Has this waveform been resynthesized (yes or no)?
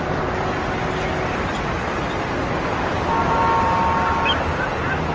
no